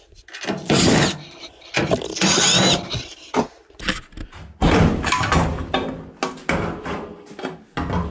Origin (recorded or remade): recorded